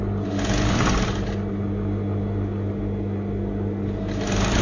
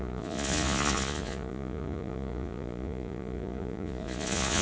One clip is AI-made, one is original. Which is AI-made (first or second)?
second